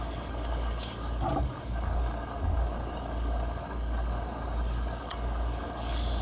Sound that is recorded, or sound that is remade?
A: remade